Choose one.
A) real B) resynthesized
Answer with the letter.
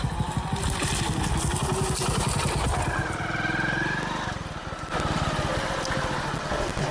A